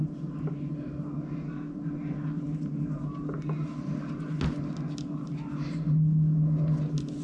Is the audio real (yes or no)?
yes